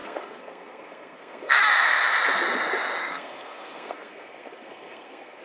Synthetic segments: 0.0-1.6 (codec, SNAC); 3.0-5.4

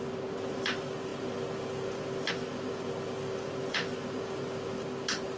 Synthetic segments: none

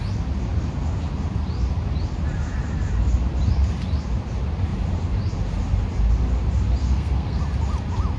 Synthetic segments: 6.8-7.4 (codec, SNAC)

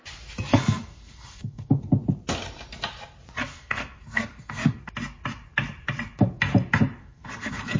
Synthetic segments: 0.5-1.8 (codec, SNAC); 3.5-4.8; 7.0-7.8

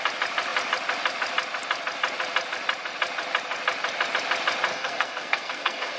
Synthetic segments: 4.7-6.0 (codec, SNAC)